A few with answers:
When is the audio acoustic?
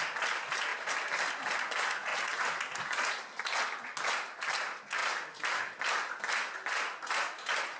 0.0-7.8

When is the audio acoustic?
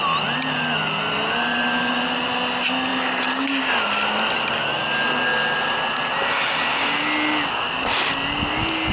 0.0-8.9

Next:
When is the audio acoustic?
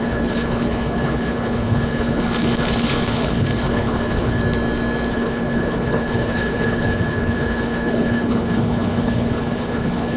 4.4-5.1